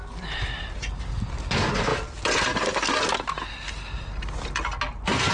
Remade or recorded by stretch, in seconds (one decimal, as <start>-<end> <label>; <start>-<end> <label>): 0.0-5.3 recorded

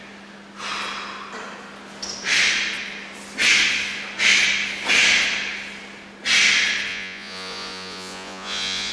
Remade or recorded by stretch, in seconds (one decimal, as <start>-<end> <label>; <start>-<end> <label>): 0.0-6.9 recorded; 6.9-8.9 remade

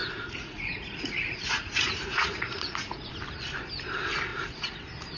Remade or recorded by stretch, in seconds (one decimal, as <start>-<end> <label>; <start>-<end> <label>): 0.0-3.1 remade; 3.1-4.3 recorded; 4.3-4.8 remade; 4.8-5.2 recorded

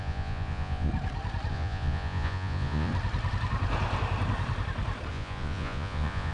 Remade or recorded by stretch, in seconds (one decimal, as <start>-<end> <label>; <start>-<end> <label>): 0.0-0.9 remade; 0.9-1.5 recorded; 1.5-2.9 remade; 2.9-5.1 recorded; 5.1-6.3 remade